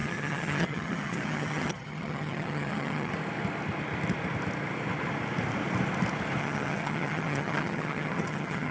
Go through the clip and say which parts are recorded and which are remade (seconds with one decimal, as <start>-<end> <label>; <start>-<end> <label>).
0.0-3.1 remade; 3.1-6.4 recorded; 6.4-8.7 remade